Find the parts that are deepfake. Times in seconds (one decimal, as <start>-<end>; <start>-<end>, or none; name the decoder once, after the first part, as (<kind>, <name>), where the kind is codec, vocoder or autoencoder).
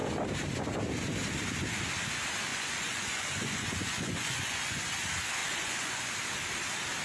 2.5-4.9 (vocoder, Vocos); 5.4-6.1